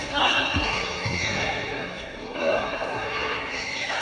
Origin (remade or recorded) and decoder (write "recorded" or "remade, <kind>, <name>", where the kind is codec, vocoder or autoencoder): remade, codec, SNAC